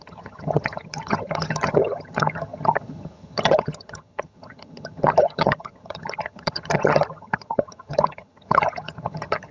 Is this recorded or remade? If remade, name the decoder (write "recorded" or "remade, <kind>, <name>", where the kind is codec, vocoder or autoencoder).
remade, vocoder, HiFi-GAN